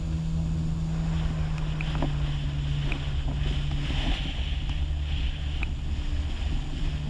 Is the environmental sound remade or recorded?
recorded